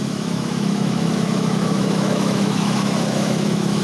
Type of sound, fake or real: fake